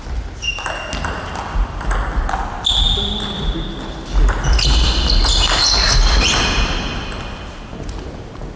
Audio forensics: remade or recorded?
recorded